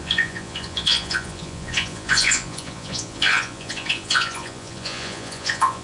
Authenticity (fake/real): fake